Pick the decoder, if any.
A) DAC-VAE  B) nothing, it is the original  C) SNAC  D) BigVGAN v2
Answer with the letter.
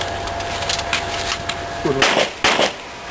B